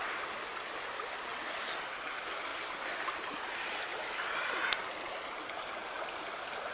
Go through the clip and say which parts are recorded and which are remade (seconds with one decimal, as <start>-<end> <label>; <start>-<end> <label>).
0.0-2.5 recorded; 2.5-3.8 remade; 3.8-6.7 recorded